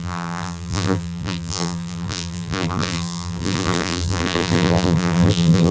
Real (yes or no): no